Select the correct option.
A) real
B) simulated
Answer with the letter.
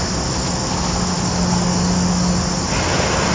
A